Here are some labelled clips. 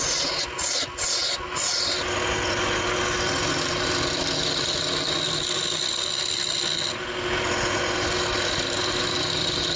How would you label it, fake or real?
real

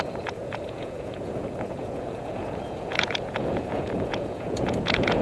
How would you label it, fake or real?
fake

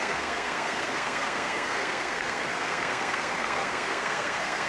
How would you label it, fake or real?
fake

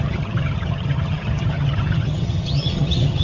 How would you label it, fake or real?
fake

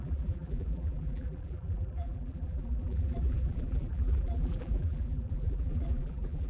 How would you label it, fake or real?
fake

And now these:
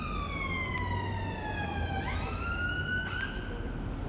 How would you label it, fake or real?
real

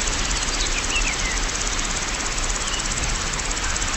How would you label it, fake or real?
real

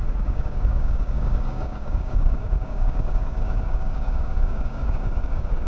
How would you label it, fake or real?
fake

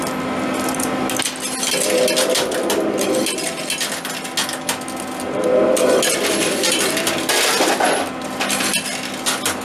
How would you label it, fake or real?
real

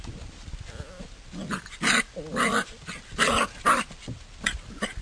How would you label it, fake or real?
real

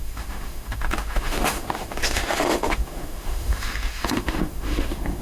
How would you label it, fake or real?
fake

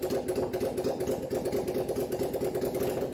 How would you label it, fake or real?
real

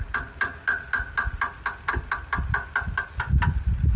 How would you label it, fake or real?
real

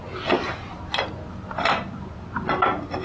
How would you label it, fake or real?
real